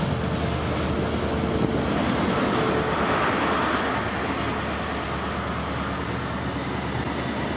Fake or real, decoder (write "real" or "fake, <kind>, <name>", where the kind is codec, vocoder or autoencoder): real